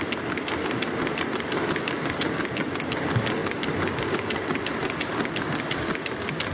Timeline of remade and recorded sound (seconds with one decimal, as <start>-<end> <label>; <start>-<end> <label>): 0.0-3.4 recorded; 3.4-4.1 remade; 4.1-6.5 recorded